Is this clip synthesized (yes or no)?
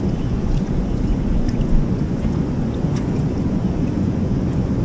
yes